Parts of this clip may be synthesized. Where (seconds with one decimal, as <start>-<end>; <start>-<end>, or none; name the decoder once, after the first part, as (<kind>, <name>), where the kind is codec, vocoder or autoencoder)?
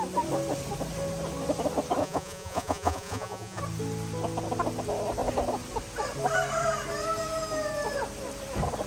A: 2.0-3.6 (vocoder, Vocos)